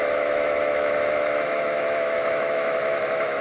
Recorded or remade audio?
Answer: remade